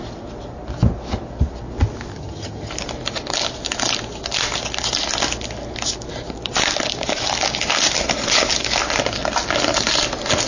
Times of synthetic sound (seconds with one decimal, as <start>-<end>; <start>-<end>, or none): 2.1-2.7